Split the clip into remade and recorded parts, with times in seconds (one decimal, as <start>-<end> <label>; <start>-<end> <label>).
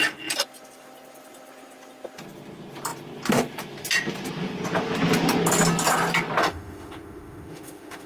0.0-6.4 recorded; 6.4-8.1 remade